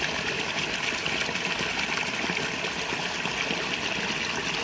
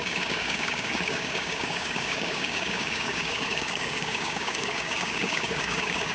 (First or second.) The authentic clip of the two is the first